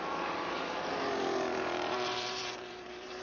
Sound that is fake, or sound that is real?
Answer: fake